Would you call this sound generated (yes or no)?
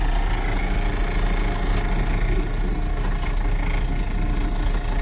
no